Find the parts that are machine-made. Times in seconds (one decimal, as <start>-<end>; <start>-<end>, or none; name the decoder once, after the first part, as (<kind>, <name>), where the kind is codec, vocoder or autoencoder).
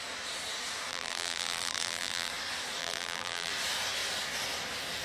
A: 0.9-2.3 (vocoder, BigVGAN v2); 2.8-3.5